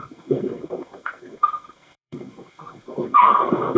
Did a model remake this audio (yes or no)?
yes